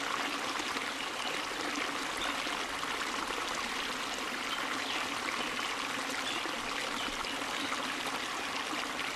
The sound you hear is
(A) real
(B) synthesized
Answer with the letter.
A